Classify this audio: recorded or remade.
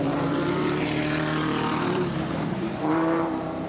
remade